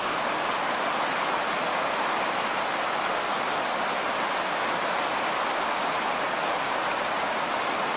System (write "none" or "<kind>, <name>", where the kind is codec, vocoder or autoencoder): none